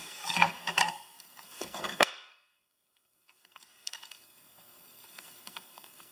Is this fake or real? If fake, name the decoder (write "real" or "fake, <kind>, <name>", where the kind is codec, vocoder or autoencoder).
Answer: fake, codec, SNAC